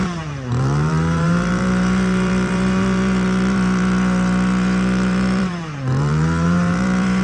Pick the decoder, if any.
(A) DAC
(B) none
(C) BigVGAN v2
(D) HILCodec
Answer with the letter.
C